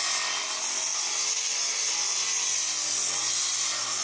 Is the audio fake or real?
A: real